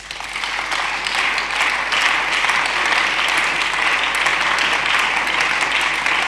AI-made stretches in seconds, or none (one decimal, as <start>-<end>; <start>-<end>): none